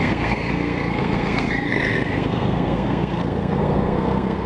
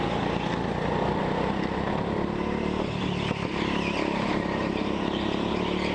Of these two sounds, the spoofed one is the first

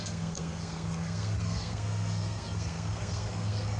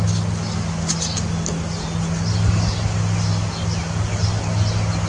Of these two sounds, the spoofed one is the first